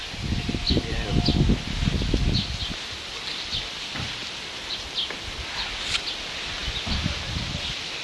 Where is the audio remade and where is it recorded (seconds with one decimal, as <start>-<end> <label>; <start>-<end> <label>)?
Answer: 0.0-8.0 recorded

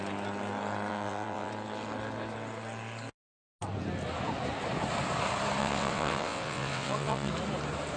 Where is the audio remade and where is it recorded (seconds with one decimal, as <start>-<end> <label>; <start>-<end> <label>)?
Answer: 0.0-0.9 recorded; 0.9-1.5 remade; 1.5-5.6 recorded; 5.6-7.3 remade; 7.3-8.0 recorded

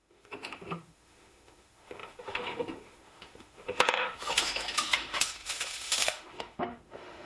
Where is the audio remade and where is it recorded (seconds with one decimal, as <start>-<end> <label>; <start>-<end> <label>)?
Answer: 0.0-7.3 remade

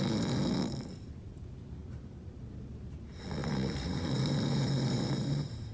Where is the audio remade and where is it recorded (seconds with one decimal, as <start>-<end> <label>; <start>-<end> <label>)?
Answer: 0.0-1.8 recorded; 1.8-2.5 remade; 2.5-3.4 recorded; 3.4-5.7 remade

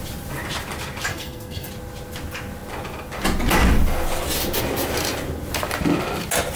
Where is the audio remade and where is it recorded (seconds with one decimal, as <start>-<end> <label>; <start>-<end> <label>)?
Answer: 0.0-1.1 recorded; 1.1-1.7 remade; 1.7-6.6 recorded

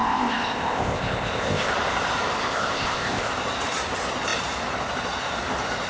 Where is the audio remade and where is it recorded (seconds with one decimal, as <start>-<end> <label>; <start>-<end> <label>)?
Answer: 0.0-1.7 remade; 1.7-2.4 recorded; 2.4-3.3 remade; 3.3-5.9 recorded

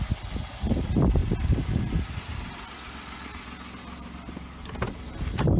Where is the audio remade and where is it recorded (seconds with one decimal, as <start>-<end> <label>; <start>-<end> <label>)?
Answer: 0.0-5.6 recorded

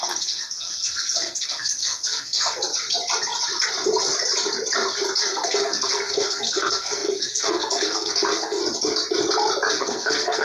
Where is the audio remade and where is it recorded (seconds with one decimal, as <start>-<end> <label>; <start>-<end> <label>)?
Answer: 0.0-2.7 remade; 2.7-5.2 recorded; 5.2-8.6 remade; 8.6-9.7 recorded; 9.7-10.4 remade